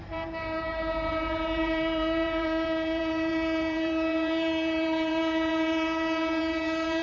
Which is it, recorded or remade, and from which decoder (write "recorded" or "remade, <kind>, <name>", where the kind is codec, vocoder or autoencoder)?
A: remade, vocoder, BigVGAN v2